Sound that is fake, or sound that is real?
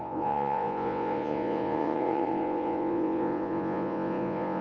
fake